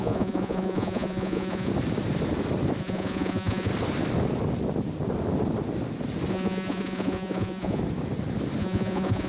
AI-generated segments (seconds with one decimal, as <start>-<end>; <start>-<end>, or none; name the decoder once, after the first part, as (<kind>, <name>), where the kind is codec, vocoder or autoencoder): 0.0-1.7 (vocoder, Vocos); 2.8-3.7; 6.3-7.8; 8.6-9.3